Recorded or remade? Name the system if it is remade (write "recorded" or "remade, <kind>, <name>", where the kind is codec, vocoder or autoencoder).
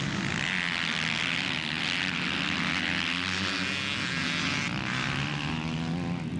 recorded